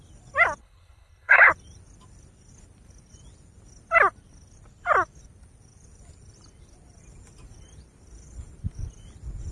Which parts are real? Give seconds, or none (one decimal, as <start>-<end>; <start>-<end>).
0.0-0.6; 1.5-9.5